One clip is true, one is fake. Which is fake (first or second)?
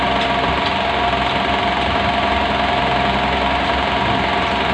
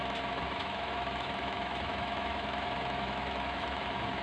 second